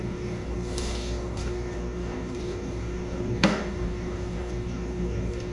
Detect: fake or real fake